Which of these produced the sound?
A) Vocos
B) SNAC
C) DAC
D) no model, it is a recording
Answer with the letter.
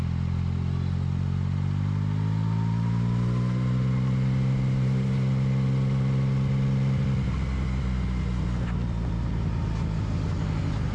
D